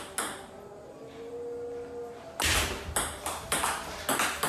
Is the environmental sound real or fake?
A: real